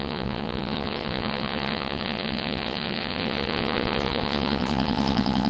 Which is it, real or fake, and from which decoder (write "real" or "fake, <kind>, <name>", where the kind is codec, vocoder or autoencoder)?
fake, vocoder, WaveNeXt